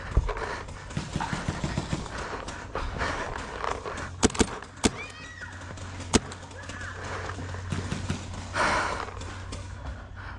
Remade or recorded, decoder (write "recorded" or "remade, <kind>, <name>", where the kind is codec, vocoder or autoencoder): recorded